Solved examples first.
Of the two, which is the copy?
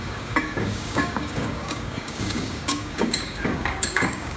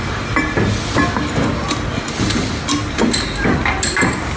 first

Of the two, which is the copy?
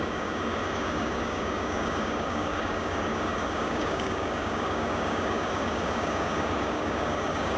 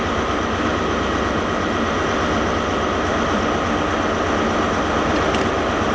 first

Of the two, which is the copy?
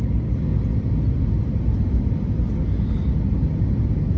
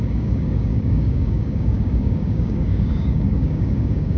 second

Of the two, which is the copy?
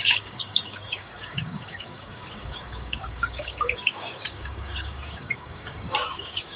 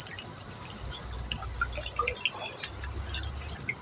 first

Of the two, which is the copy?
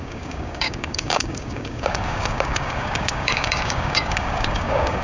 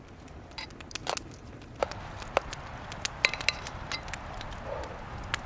first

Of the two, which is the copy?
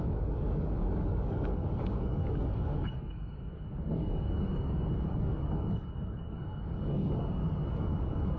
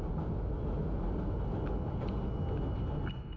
first